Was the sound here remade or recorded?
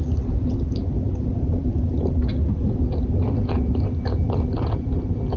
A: recorded